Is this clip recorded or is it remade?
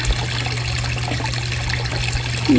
recorded